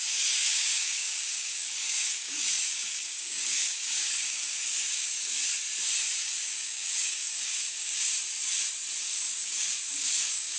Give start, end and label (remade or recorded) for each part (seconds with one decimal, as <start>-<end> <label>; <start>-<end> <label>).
0.0-5.5 remade; 5.5-6.2 recorded; 6.2-8.1 remade; 8.1-9.0 recorded; 9.0-10.6 remade

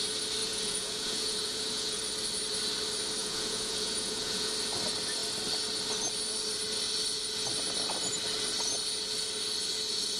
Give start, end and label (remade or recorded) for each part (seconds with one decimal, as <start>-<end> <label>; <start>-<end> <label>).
0.0-0.4 recorded; 0.4-2.0 remade; 2.0-3.2 recorded; 3.2-4.5 remade; 4.5-10.2 recorded

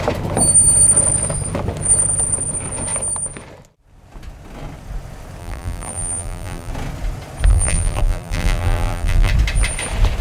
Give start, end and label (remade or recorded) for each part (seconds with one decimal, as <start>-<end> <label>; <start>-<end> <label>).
0.0-5.4 recorded; 5.4-6.7 remade; 6.7-7.5 recorded; 7.5-9.3 remade; 9.3-10.2 recorded

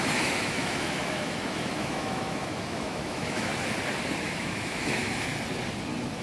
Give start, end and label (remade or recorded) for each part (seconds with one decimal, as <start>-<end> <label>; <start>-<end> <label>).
0.0-3.5 remade; 3.5-4.2 recorded; 4.2-5.3 remade; 5.3-6.2 recorded

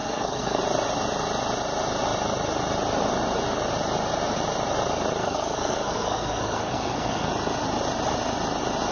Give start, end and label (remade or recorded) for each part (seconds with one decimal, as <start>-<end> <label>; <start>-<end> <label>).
0.0-0.6 remade; 0.6-5.2 recorded; 5.2-7.3 remade; 7.3-8.9 recorded